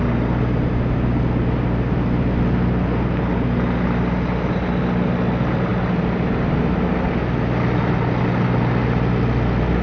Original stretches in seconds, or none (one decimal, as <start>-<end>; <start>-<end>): 0.0-9.8